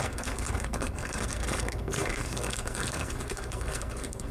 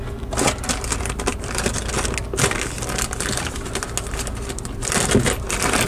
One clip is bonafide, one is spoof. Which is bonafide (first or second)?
second